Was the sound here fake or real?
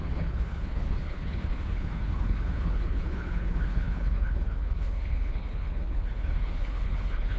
fake